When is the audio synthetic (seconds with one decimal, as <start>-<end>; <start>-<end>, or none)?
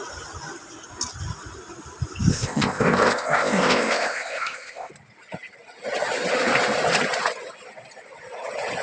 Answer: 2.3-4.9